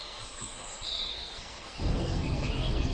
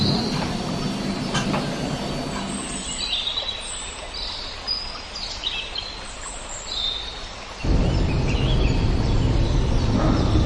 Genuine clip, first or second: second